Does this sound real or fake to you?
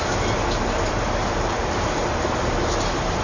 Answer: fake